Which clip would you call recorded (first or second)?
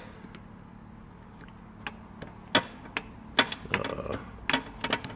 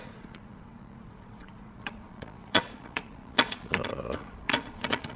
first